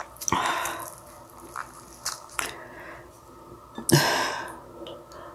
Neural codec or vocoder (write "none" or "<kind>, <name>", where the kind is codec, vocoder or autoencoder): none